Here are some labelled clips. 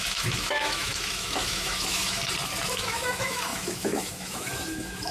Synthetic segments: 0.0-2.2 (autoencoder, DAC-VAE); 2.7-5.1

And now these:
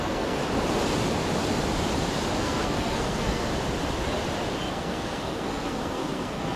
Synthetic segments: 0.0-0.4 (codec, SNAC); 2.4-3.5; 4.7-6.6

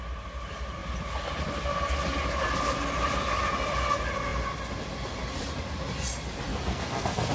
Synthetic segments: 6.5-7.3 (codec, SNAC)

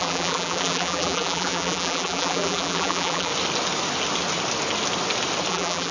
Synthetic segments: 0.0-3.3 (vocoder, BigVGAN v2); 5.5-5.9

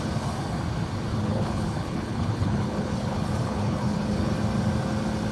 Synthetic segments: 1.1-4.3 (codec, HILCodec)

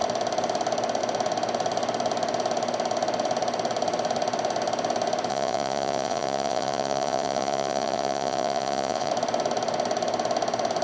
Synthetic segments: 5.3-9.1 (vocoder, Vocos)

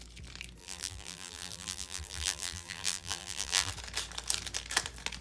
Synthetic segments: 0.6-3.7 (vocoder, BigVGAN v2)